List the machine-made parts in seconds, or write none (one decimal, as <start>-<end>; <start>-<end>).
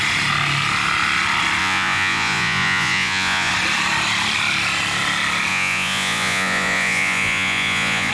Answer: 1.6-3.5; 5.5-8.1